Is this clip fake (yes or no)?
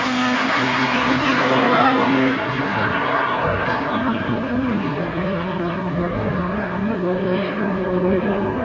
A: yes